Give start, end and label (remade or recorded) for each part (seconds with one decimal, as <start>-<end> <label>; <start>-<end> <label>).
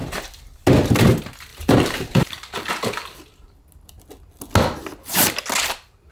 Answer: 0.0-1.5 recorded; 1.5-2.7 remade; 2.7-6.1 recorded